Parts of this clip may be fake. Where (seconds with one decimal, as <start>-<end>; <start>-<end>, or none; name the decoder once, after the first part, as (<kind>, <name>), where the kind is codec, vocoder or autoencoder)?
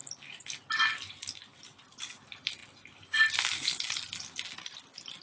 none